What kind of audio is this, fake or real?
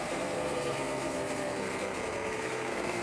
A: fake